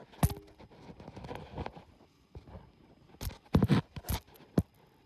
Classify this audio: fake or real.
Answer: real